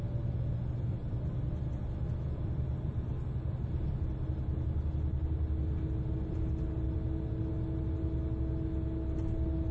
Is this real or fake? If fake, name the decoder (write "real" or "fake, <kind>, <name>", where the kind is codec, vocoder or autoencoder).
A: real